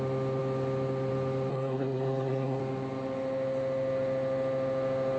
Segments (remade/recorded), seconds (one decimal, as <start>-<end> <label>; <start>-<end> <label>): 0.0-1.5 recorded; 1.5-2.6 remade; 2.6-5.2 recorded